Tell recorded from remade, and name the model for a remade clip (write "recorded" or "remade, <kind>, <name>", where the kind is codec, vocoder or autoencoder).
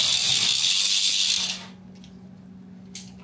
recorded